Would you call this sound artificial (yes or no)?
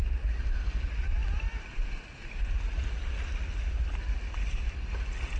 no